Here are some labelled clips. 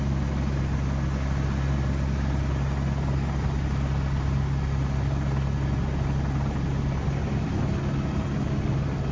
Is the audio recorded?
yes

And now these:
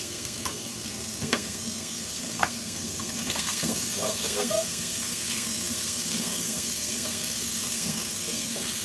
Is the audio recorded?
no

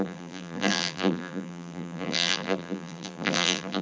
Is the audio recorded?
no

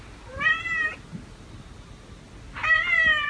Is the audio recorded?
yes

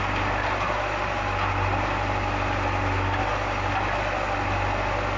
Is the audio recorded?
yes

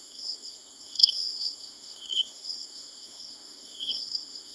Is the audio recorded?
no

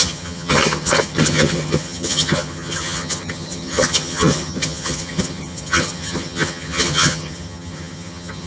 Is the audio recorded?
no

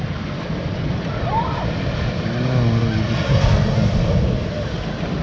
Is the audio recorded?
yes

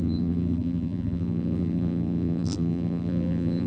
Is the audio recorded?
no